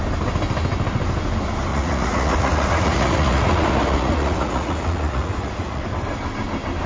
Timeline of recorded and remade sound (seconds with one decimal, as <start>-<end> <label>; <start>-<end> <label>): 0.0-1.7 recorded; 1.7-5.8 remade; 5.8-6.9 recorded